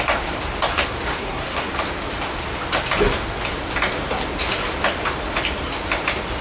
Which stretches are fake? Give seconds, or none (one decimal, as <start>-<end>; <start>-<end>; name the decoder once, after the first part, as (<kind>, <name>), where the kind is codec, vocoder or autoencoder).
1.1-1.7 (codec, SNAC)